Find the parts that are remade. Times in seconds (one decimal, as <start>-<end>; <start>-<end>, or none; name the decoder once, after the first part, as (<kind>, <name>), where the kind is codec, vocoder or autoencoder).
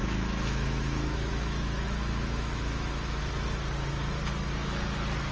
0.0-3.2 (autoencoder, DAC-VAE)